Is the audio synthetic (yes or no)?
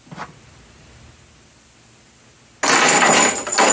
no